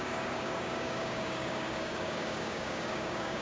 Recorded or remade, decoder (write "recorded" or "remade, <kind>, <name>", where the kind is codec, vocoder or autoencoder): remade, codec, DAC